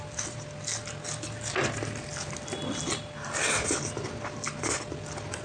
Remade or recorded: recorded